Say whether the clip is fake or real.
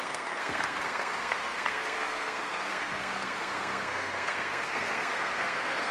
fake